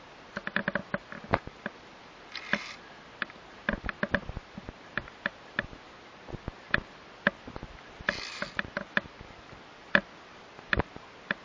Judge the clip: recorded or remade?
recorded